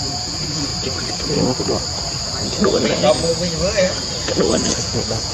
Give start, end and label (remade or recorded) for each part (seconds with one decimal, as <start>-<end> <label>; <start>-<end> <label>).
0.0-0.7 remade; 0.7-2.2 recorded; 2.2-3.0 remade; 3.0-3.8 recorded; 3.8-5.3 remade